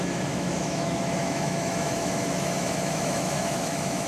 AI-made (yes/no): yes